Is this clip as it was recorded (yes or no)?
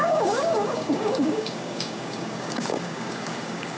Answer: no